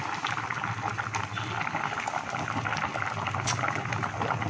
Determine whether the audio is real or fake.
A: real